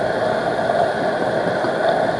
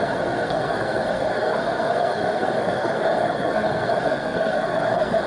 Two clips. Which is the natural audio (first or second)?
first